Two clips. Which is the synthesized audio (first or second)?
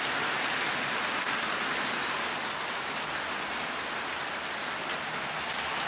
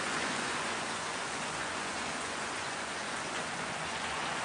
second